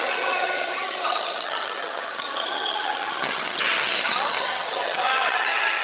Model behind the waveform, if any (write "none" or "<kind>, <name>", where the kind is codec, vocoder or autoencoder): vocoder, HiFi-GAN